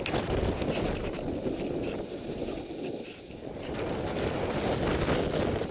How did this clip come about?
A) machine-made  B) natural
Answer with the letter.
B